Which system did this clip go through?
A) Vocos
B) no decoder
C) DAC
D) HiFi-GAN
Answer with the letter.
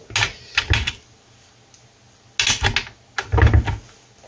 B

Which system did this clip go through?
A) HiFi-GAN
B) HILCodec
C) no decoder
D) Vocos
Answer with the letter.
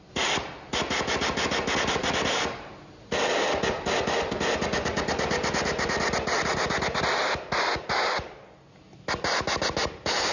C